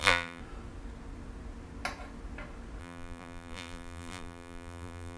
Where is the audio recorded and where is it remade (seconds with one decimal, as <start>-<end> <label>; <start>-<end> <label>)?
0.0-0.4 remade; 0.4-2.8 recorded; 2.8-5.2 remade